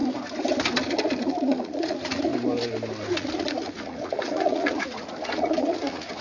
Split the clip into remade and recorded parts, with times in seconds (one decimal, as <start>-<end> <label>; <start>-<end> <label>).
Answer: 0.0-1.2 recorded; 1.2-2.3 remade; 2.3-3.1 recorded; 3.1-6.2 remade

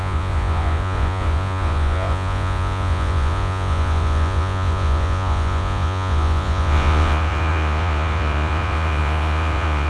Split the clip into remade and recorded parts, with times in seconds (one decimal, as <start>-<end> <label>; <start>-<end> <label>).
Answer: 0.0-9.9 remade